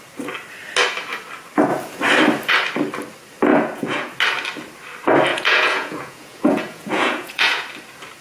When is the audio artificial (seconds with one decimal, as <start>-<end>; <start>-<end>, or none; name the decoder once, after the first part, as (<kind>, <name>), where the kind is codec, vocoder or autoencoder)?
3.5-4.1 (vocoder, Vocos); 5.3-7.6